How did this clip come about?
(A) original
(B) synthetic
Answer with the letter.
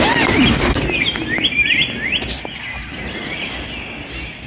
A